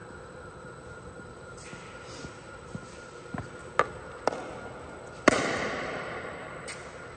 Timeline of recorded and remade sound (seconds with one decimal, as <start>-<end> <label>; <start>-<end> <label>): 0.0-1.9 remade; 1.9-7.2 recorded